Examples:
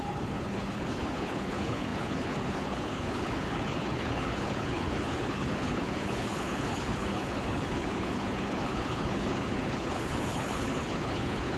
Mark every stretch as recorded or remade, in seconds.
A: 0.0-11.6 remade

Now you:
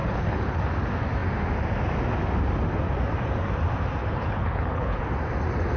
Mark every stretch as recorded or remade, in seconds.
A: 0.0-0.6 remade; 0.6-4.0 recorded; 4.0-5.0 remade; 5.0-5.8 recorded

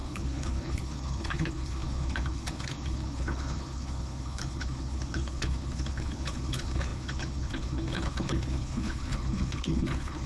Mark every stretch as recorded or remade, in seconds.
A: 0.0-10.3 remade

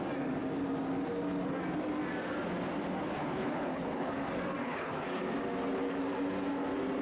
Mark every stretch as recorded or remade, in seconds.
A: 0.0-3.2 recorded; 3.2-4.1 remade; 4.1-4.6 recorded; 4.6-5.2 remade; 5.2-7.0 recorded

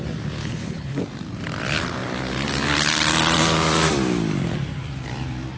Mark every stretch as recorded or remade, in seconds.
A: 0.0-0.4 recorded; 0.4-1.0 remade; 1.0-5.6 recorded

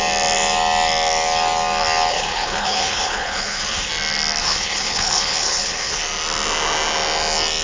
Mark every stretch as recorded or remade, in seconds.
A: 0.0-2.1 recorded; 2.1-3.9 remade; 3.9-4.4 recorded; 4.4-6.0 remade; 6.0-7.6 recorded